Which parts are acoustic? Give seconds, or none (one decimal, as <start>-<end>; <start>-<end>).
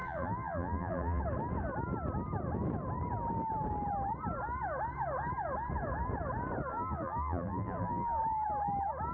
1.2-6.7; 8.2-9.1